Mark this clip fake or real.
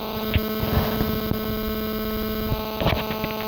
real